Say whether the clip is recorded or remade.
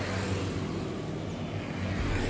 recorded